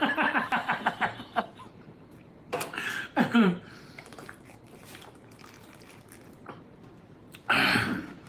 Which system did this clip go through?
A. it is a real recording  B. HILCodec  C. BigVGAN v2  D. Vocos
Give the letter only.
C